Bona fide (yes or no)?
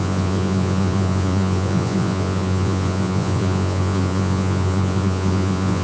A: no